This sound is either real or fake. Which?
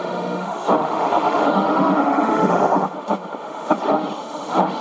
fake